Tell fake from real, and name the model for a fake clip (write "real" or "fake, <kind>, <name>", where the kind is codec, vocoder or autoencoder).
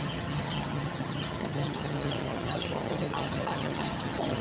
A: fake, vocoder, HiFi-GAN